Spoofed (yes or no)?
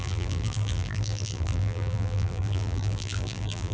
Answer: yes